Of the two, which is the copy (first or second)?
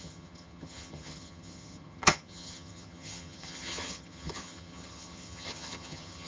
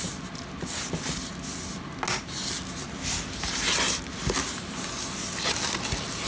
first